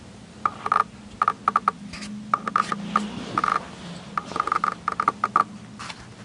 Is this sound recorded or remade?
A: recorded